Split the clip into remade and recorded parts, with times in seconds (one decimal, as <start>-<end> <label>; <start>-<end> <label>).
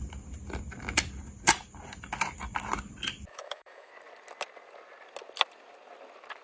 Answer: 0.0-3.3 recorded; 3.3-3.9 remade; 3.9-6.4 recorded